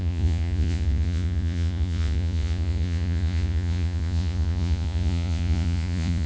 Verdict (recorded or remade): remade